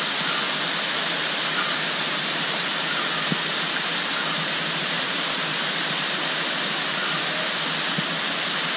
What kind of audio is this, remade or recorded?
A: recorded